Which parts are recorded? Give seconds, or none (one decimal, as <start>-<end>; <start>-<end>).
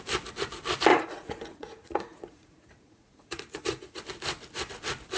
0.0-0.9; 4.0-5.2